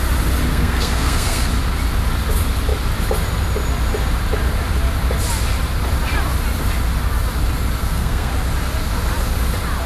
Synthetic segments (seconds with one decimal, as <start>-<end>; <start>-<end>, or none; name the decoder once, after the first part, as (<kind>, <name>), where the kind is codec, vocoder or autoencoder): 0.5-1.5 (codec, SNAC); 7.8-8.3